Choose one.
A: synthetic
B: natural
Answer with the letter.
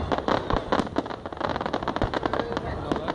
B